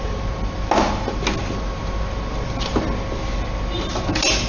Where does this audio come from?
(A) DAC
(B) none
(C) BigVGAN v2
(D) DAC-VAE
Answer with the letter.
B